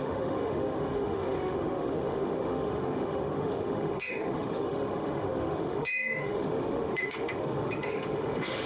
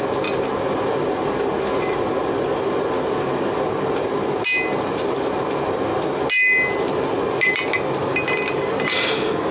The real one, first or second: second